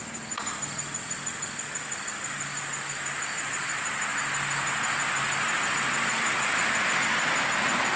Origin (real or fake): real